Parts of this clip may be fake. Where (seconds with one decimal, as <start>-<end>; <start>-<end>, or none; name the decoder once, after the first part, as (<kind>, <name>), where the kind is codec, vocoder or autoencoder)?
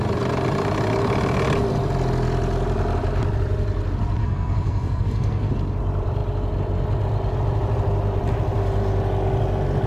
4.2-5.5 (codec, SNAC)